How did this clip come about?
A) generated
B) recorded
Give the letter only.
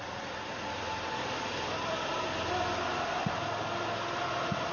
B